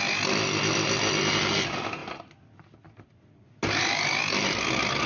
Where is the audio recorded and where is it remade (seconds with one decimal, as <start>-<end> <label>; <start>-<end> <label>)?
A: 0.0-5.1 recorded